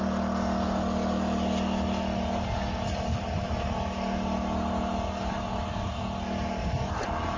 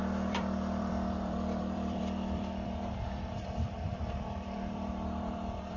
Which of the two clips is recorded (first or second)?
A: first